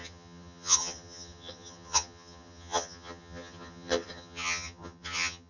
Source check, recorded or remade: remade